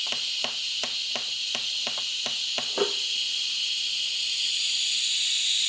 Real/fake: real